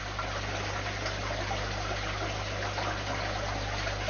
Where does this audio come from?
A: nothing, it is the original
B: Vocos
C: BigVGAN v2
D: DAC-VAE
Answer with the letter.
A